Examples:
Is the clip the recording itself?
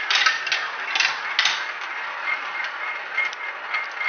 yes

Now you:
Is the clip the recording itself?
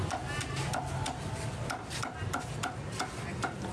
yes